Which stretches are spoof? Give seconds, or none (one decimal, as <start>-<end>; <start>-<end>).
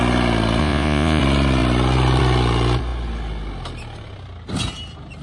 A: 0.6-1.2